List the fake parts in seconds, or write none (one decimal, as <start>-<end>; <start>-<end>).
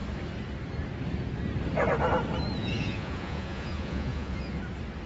2.6-4.6